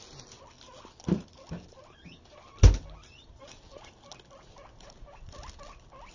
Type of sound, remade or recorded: recorded